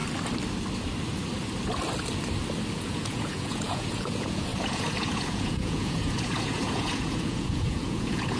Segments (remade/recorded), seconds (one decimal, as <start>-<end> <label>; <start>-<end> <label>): 0.0-2.8 recorded; 2.8-8.4 remade